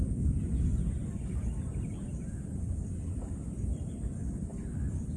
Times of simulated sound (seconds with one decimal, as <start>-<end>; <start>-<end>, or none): 0.0-0.7; 1.9-4.5